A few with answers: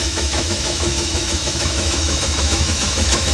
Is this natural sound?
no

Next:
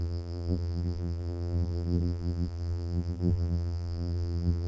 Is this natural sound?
no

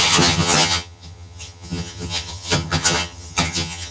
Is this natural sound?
no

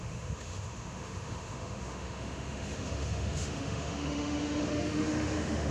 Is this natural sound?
no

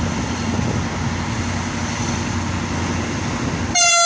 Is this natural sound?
yes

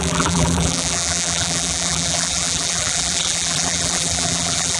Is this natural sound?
no